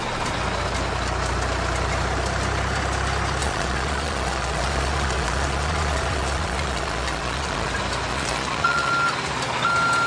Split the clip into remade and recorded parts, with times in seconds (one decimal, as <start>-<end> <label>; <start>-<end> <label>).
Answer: 0.0-3.4 recorded; 3.4-7.7 remade; 7.7-8.1 recorded; 8.1-8.9 remade; 8.9-10.1 recorded